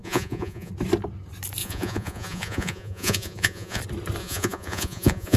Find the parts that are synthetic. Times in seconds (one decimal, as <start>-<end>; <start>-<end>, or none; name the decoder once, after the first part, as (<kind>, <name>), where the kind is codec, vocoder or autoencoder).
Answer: 0.0-0.7 (vocoder, Vocos); 1.6-3.8; 4.2-5.4